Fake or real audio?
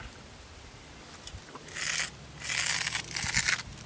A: real